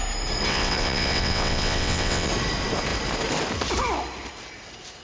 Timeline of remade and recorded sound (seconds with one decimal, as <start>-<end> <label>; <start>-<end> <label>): 0.0-0.5 recorded; 0.5-2.3 remade; 2.3-5.0 recorded